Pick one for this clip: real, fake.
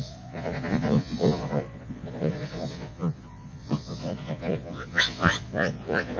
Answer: fake